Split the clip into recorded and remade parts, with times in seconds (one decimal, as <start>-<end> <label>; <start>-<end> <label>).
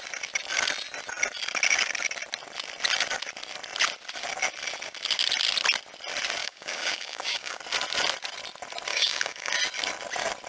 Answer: 0.0-6.4 recorded; 6.4-7.6 remade; 7.6-8.9 recorded; 8.9-9.5 remade; 9.5-10.5 recorded